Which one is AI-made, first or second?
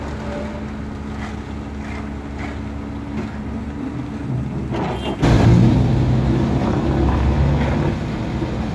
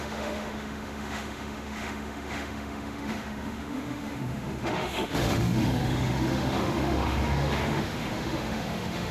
second